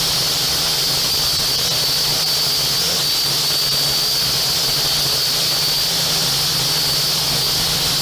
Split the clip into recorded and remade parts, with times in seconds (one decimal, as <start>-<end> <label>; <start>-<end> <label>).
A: 0.0-8.0 recorded